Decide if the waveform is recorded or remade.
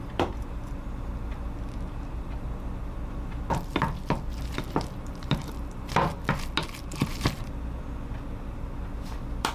recorded